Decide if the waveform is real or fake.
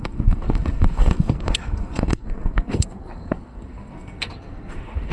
fake